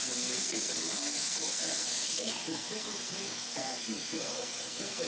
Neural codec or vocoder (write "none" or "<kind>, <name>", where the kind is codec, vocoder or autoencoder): codec, SNAC